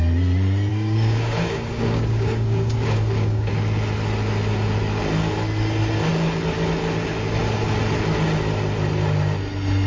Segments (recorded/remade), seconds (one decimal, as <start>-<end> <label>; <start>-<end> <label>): 0.0-0.7 recorded; 0.7-3.5 remade; 3.5-9.9 recorded